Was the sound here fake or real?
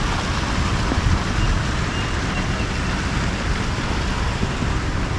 real